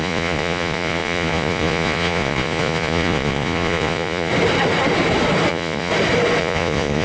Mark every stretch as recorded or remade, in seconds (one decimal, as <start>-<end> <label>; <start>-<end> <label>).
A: 0.0-4.3 remade; 4.3-5.5 recorded; 5.5-5.9 remade; 5.9-6.4 recorded; 6.4-7.0 remade